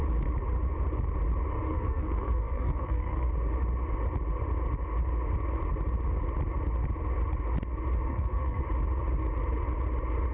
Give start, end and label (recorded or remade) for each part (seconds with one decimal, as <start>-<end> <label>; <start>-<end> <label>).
0.0-1.7 recorded; 1.7-3.3 remade; 3.3-8.1 recorded; 8.1-8.6 remade; 8.6-10.3 recorded